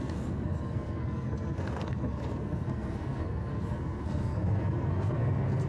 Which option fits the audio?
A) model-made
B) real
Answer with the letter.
A